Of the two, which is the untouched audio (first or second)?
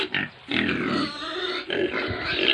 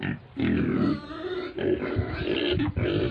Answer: second